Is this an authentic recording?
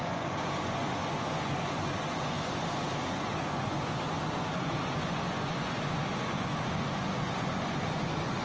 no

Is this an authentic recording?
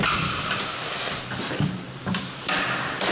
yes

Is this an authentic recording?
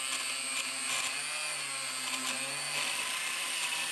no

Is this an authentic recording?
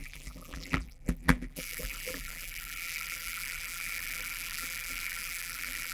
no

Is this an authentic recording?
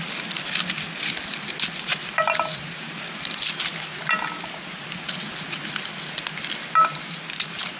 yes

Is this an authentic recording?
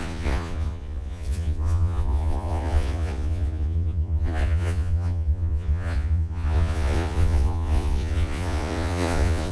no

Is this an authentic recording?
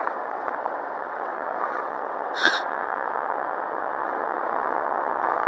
no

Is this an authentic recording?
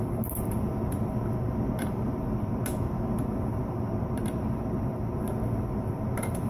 no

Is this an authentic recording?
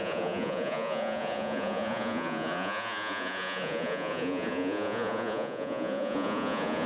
no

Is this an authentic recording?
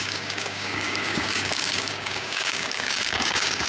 no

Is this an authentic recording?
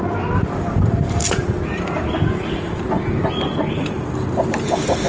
no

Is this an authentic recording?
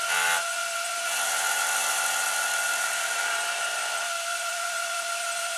no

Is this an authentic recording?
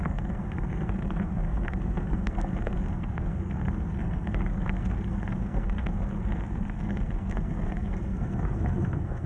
no